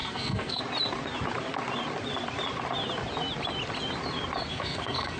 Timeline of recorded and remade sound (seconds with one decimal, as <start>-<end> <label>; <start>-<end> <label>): 0.0-0.6 remade; 0.6-4.5 recorded; 4.5-5.2 remade